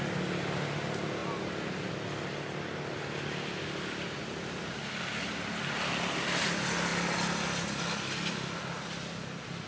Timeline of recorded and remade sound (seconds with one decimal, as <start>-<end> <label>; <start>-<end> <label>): 0.0-9.7 recorded